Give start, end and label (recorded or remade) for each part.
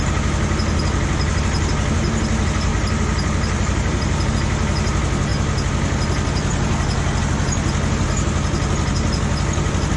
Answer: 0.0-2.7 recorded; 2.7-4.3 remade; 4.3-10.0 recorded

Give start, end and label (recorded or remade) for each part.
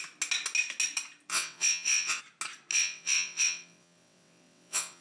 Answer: 0.0-1.3 recorded; 1.3-2.2 remade; 2.2-2.7 recorded; 2.7-5.0 remade